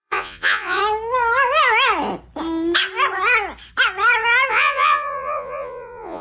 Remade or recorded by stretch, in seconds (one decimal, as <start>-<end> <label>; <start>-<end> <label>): 0.0-0.8 remade; 0.8-4.5 recorded; 4.5-6.2 remade